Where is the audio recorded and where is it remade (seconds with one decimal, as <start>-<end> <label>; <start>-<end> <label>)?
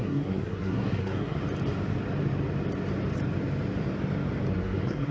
0.0-1.4 remade; 1.4-4.5 recorded; 4.5-5.1 remade